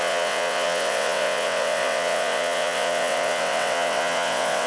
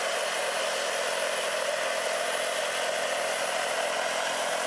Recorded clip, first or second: second